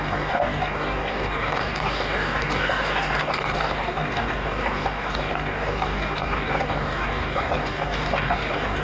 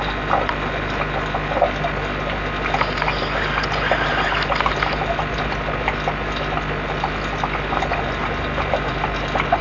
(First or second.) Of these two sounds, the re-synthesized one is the first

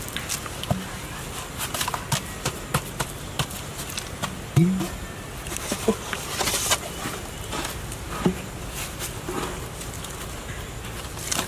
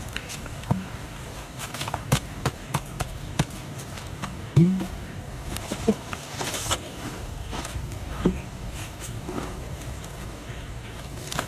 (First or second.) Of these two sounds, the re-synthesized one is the second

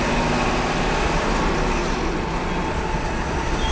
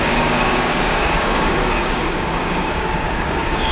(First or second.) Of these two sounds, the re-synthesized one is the second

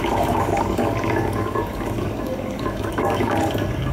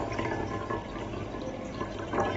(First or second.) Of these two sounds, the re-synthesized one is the first